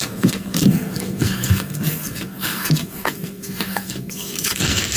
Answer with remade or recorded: remade